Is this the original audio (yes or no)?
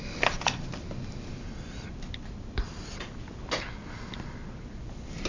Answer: yes